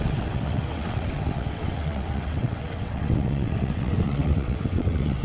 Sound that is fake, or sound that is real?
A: fake